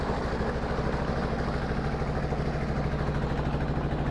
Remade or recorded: recorded